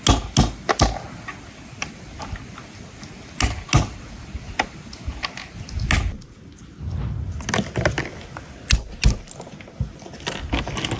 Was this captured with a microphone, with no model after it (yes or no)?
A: yes